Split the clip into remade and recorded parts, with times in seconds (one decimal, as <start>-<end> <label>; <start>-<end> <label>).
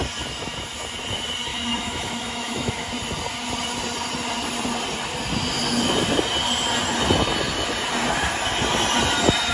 0.0-1.5 recorded; 1.5-2.9 remade; 2.9-9.5 recorded